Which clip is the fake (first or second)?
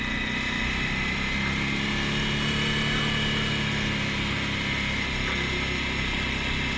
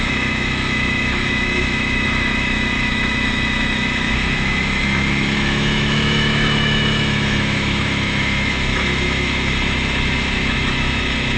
second